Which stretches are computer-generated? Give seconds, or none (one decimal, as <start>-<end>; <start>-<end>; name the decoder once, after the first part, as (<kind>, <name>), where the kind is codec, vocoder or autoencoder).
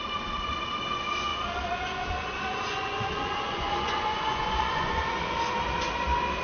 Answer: 1.3-5.1 (vocoder, Vocos)